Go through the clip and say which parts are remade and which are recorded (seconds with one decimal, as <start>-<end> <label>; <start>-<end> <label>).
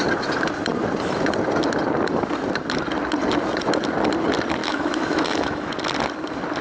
0.0-4.6 recorded; 4.6-5.7 remade; 5.7-6.6 recorded